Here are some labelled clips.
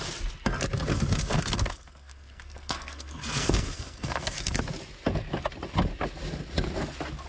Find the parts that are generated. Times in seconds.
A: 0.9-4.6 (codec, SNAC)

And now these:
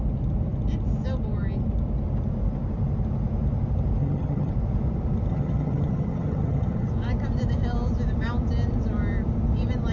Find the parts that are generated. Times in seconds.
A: 4.0-4.5 (vocoder, HiFi-GAN); 5.3-6.9

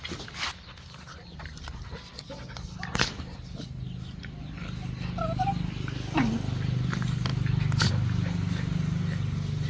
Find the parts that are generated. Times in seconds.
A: none

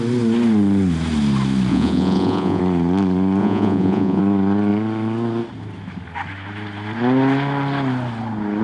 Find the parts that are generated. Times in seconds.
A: 1.7-2.6 (vocoder, Vocos); 3.4-4.2

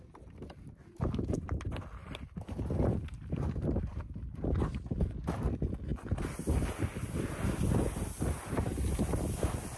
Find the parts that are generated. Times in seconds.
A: 2.0-4.8 (vocoder, BigVGAN v2)

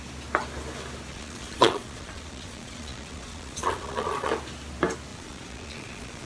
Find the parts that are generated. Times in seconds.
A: 1.1-4.3 (vocoder, Vocos); 5.1-6.3